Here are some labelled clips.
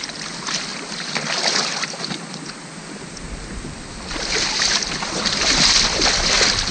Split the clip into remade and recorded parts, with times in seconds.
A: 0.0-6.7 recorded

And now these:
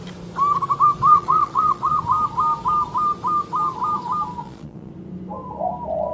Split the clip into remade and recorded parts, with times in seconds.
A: 0.0-1.1 recorded; 1.1-2.0 remade; 2.0-4.4 recorded; 4.4-4.9 remade; 4.9-6.1 recorded